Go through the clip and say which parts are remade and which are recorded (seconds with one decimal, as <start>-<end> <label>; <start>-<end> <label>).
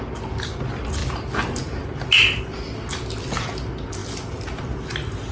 0.0-5.3 recorded